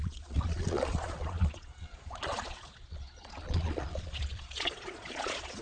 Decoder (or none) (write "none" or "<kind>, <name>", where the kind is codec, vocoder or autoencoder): vocoder, Vocos